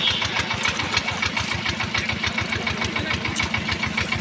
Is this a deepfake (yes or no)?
no